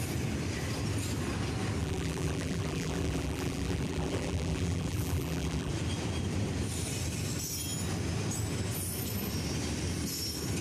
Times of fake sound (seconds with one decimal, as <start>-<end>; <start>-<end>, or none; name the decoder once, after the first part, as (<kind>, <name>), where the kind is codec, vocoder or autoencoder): 1.8-5.7 (vocoder, BigVGAN v2)